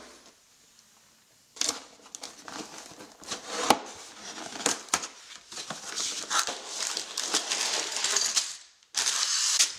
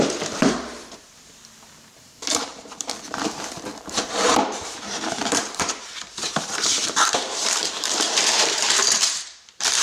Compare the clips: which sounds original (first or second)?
first